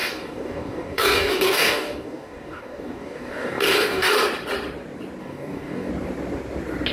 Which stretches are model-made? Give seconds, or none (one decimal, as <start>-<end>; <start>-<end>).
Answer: 0.0-4.1; 5.2-5.9